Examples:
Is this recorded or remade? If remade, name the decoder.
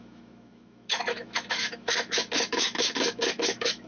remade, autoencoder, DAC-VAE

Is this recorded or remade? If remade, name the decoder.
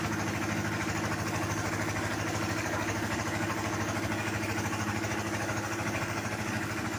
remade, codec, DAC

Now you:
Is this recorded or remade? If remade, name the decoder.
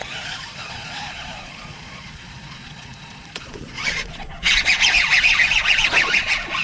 remade, vocoder, Vocos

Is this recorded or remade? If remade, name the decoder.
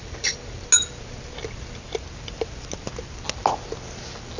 recorded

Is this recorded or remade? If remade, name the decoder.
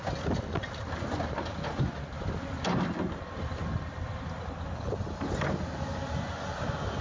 recorded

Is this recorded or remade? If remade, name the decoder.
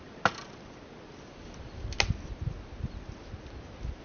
recorded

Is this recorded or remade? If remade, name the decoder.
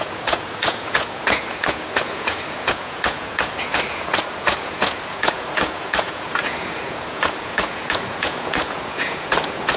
remade, vocoder, Vocos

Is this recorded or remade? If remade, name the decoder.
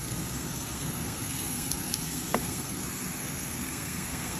remade, codec, SNAC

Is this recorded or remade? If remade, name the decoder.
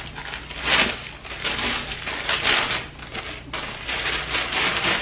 recorded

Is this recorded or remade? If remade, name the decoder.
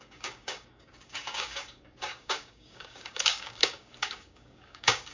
remade, codec, DAC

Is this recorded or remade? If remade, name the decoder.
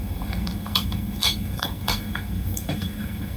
remade, codec, SNAC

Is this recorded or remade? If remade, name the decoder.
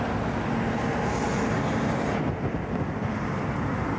recorded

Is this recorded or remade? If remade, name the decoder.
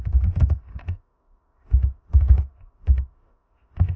remade, autoencoder, DAC-VAE